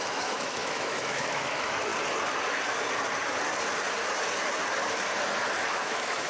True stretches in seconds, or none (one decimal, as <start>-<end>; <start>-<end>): 1.9-5.7